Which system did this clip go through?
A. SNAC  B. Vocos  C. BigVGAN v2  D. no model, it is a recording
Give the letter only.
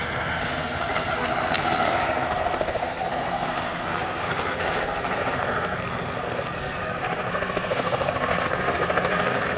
A